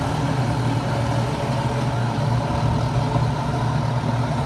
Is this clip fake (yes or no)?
no